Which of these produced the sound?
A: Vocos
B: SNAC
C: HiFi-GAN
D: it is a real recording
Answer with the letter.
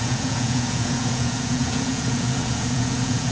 A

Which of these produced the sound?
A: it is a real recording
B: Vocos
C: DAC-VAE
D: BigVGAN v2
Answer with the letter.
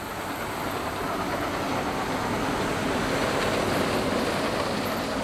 A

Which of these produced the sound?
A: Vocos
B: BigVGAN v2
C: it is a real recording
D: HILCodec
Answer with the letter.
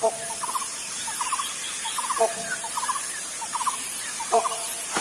B